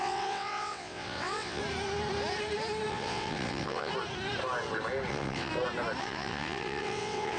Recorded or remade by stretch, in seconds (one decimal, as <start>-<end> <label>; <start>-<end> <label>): 0.0-1.6 remade; 1.6-2.9 recorded; 2.9-3.9 remade; 3.9-5.1 recorded; 5.1-5.5 remade; 5.5-6.0 recorded; 6.0-7.4 remade